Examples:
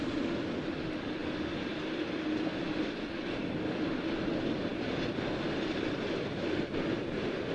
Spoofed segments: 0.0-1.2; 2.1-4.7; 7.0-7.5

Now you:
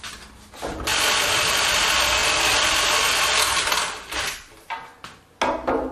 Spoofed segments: 0.9-1.8; 2.2-3.1

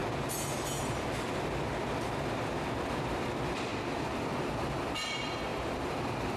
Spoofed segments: 0.8-6.4

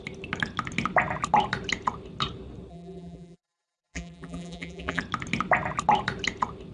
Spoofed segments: 2.7-5.0

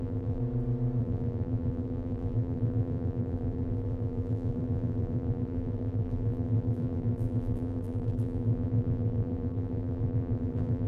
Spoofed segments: 0.0-0.4; 1.0-10.9

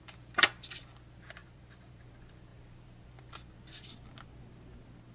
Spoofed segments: 1.4-2.0; 2.5-3.2

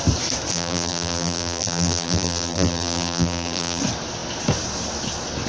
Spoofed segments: 0.5-3.8

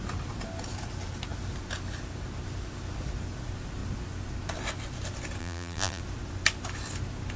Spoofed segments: 5.4-6.0